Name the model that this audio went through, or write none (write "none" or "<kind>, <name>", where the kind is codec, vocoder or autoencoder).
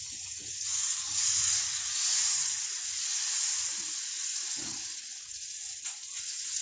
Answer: vocoder, Vocos